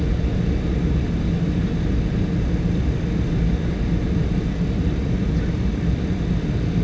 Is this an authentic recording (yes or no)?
yes